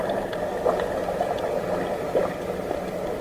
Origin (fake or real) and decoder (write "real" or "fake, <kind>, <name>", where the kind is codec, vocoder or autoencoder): real